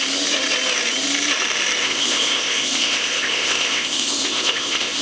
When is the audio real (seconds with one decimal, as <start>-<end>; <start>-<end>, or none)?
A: 0.0-1.8

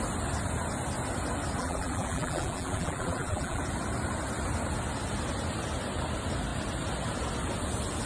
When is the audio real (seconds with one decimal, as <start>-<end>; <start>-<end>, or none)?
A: 0.0-1.6; 3.6-8.1

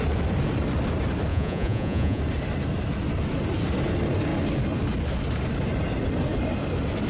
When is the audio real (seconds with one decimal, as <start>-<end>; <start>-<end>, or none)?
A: 0.0-1.3; 2.2-7.1

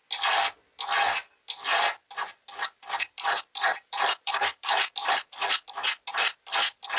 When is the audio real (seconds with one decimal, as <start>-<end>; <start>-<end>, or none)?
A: 0.0-3.7; 4.9-7.0